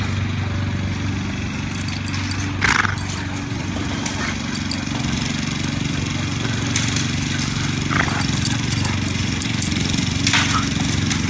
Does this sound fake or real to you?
real